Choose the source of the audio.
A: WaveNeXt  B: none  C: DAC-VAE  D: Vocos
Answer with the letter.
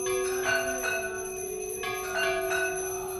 B